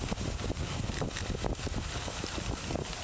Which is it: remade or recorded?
recorded